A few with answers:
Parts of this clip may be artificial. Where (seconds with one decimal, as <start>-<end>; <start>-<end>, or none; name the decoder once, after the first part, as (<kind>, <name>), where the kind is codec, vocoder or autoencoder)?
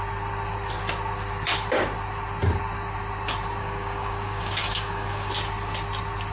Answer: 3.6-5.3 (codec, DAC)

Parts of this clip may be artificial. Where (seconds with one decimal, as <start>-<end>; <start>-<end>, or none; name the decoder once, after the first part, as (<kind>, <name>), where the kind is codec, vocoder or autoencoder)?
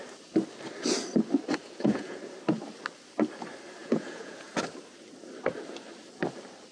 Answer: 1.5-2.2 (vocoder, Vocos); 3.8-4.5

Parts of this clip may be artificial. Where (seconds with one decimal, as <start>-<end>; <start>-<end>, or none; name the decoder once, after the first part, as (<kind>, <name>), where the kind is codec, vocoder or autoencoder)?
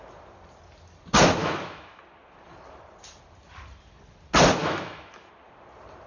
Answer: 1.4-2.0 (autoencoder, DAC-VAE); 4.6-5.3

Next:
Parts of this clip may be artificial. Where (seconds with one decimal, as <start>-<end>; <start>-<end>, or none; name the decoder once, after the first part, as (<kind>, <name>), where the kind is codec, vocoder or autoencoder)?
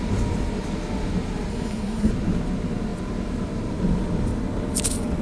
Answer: 1.5-2.1 (codec, SNAC)